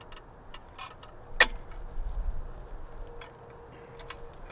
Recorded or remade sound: recorded